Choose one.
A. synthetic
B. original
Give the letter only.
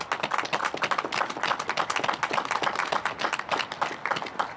B